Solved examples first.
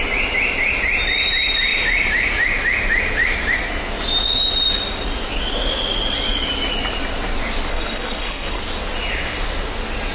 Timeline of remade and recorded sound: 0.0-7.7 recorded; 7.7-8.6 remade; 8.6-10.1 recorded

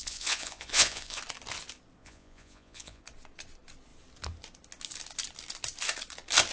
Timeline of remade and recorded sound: 0.0-1.2 remade; 1.2-2.0 recorded; 2.0-3.0 remade; 3.0-6.5 recorded

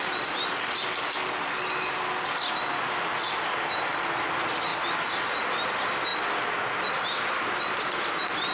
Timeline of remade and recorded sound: 0.0-8.5 recorded

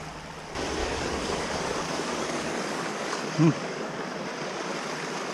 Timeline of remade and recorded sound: 0.0-0.8 recorded; 0.8-4.0 remade; 4.0-5.3 recorded

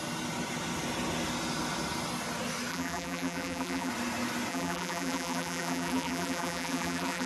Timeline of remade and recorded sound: 0.0-2.7 recorded; 2.7-3.9 remade; 3.9-4.5 recorded; 4.5-7.3 remade

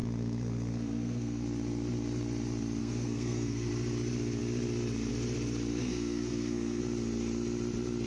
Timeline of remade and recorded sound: 0.0-1.4 remade; 1.4-2.8 recorded; 2.8-3.7 remade; 3.7-5.7 recorded; 5.7-6.8 remade; 6.8-8.1 recorded

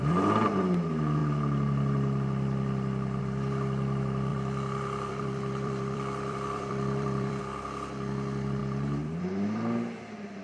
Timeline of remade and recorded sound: 0.0-1.2 recorded; 1.2-3.2 remade; 3.2-4.3 recorded; 4.3-7.4 remade; 7.4-8.6 recorded; 8.6-9.2 remade; 9.2-10.4 recorded

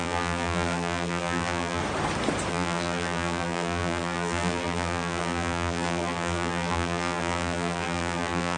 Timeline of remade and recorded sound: 0.0-1.8 remade; 1.8-2.5 recorded; 2.5-8.6 remade